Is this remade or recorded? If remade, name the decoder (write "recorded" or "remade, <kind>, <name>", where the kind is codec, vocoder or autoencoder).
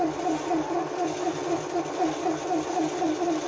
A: recorded